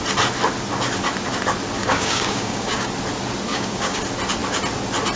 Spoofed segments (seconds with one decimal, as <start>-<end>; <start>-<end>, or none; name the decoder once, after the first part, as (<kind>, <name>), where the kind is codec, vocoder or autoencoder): 1.8-2.9 (codec, DAC); 3.5-4.0